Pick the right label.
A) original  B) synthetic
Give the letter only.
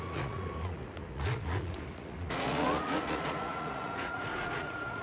B